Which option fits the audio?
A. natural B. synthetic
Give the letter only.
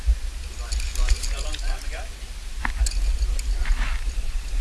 A